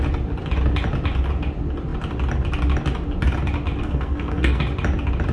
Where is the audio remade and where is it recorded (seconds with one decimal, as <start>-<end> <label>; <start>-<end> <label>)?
0.0-3.8 recorded; 3.8-4.6 remade; 4.6-5.3 recorded